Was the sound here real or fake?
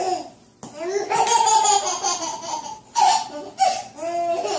real